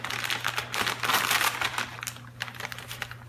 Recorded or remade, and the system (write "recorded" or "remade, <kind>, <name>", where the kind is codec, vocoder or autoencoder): recorded